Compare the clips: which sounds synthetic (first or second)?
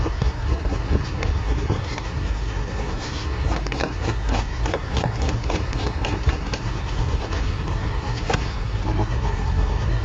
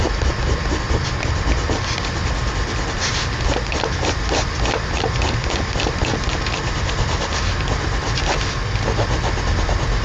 first